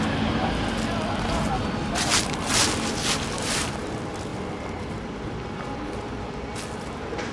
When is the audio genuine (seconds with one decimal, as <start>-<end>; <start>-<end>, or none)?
0.0-7.3